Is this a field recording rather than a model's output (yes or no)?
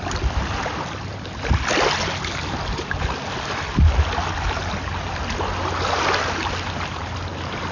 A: yes